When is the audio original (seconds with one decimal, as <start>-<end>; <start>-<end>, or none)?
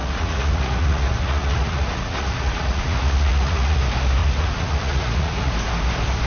3.8-4.2; 5.5-6.3